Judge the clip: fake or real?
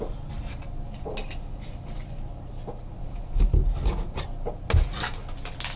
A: real